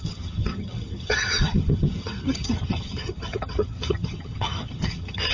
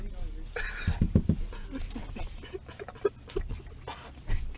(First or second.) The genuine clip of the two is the second